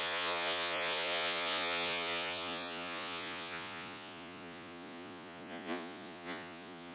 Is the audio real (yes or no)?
no